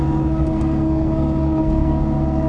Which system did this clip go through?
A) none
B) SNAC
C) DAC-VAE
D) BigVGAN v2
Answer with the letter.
B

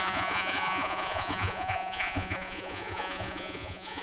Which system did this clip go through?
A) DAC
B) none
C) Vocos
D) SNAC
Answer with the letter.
C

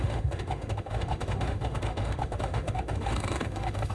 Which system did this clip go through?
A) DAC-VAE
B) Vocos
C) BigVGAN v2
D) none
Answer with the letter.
A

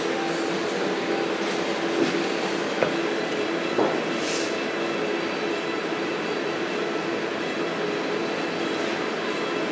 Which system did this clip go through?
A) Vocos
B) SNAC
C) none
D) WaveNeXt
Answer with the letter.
C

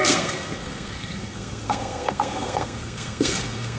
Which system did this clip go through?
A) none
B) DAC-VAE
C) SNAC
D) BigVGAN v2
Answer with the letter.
C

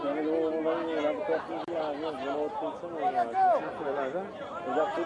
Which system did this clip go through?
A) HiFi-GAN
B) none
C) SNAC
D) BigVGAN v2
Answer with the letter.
B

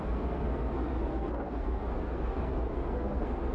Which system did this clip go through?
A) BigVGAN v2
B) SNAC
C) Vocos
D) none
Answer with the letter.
B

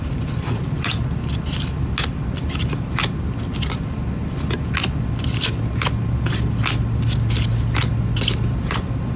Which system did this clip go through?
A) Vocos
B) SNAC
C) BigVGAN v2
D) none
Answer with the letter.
D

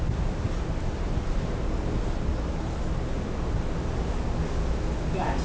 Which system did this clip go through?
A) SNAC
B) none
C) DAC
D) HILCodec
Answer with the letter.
B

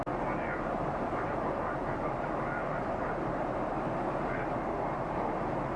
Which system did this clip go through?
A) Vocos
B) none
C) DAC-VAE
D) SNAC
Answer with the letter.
B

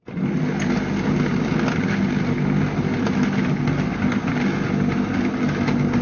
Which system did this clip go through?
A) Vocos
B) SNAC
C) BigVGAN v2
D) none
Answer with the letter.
D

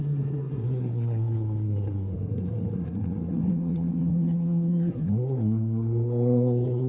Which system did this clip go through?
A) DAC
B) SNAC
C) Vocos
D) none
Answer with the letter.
B